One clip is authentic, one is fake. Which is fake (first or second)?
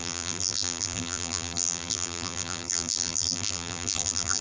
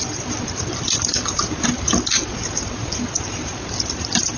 first